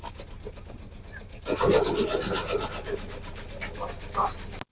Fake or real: real